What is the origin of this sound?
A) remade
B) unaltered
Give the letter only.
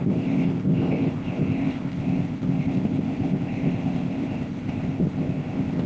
A